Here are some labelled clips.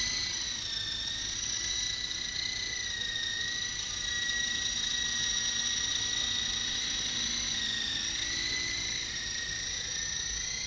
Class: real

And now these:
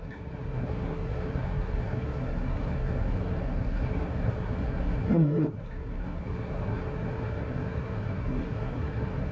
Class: fake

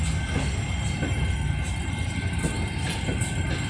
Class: real